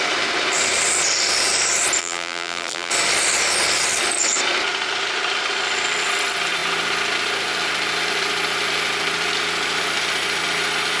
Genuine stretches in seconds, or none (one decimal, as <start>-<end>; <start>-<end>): 0.0-2.0; 2.9-11.0